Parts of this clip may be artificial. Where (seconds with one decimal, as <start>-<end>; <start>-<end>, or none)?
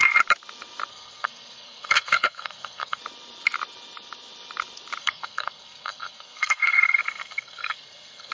0.9-3.0; 5.0-8.3